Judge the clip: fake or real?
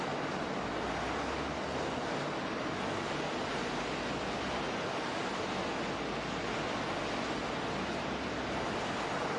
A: real